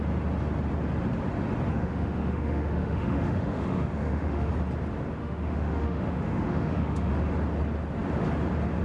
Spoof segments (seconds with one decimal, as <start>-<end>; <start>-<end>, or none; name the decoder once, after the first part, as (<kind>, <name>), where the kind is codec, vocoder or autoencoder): 1.7-4.5 (autoencoder, DAC-VAE); 5.2-7.1